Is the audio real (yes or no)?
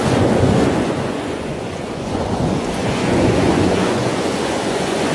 no